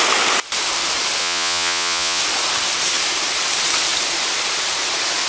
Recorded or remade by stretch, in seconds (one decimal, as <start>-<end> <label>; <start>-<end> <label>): 0.0-1.2 recorded; 1.2-2.2 remade; 2.2-5.3 recorded